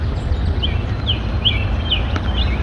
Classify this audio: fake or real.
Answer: real